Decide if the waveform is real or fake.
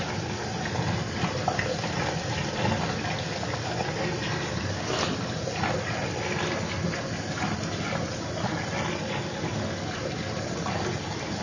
real